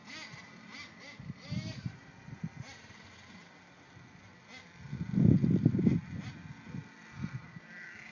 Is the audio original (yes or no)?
yes